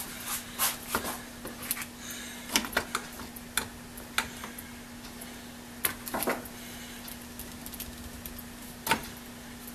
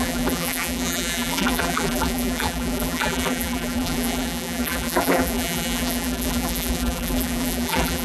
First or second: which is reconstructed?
second